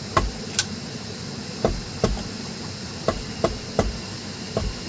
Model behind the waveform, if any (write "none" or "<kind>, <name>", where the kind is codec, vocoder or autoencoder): none